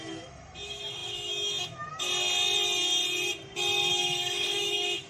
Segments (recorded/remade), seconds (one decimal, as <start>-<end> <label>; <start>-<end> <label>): 0.0-2.1 remade; 2.1-3.9 recorded; 3.9-5.1 remade